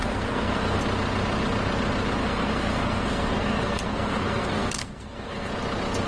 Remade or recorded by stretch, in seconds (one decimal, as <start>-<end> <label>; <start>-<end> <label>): 0.0-0.8 remade; 0.8-2.2 recorded; 2.2-5.5 remade; 5.5-6.1 recorded